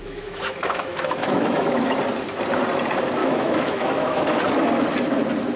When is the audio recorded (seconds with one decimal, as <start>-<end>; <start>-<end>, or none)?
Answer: 2.0-3.2; 4.4-5.6